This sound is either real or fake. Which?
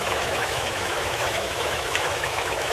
fake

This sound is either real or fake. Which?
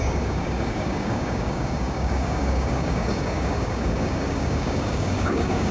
fake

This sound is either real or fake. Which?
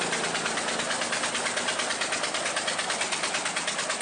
real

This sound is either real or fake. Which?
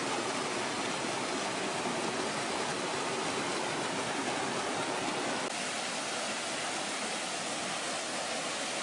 real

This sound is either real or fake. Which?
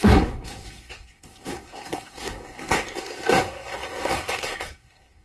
fake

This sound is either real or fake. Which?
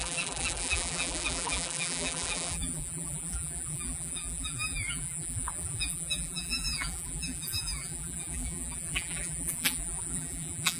fake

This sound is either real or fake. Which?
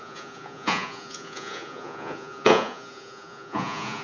fake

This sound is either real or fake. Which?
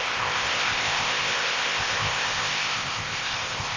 fake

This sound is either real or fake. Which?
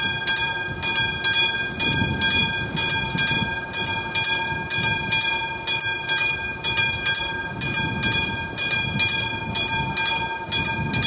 real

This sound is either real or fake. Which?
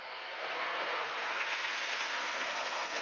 fake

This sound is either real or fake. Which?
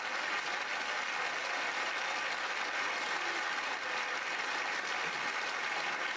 real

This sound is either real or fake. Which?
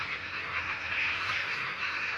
fake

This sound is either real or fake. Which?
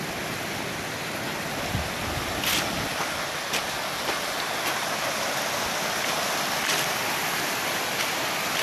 real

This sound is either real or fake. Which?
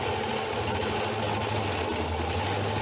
real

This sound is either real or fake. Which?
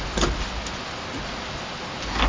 real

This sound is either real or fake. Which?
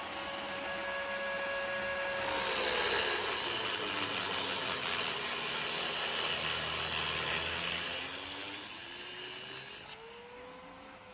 real